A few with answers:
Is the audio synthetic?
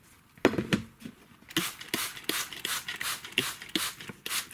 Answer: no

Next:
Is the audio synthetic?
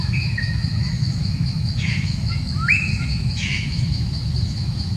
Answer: yes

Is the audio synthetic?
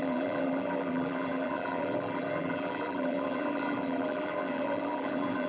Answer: yes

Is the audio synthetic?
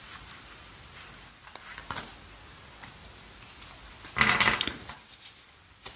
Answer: no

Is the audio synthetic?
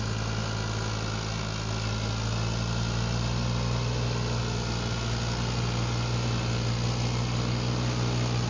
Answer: no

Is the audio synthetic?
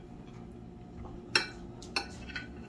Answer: no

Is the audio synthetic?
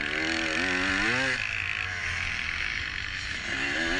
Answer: no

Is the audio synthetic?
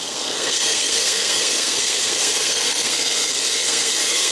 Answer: yes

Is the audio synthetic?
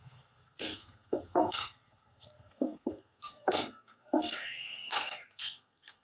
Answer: yes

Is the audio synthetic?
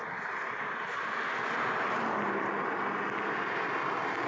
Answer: no